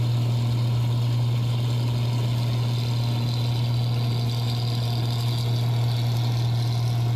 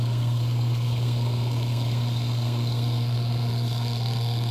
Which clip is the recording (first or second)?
first